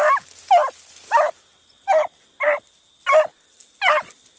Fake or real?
real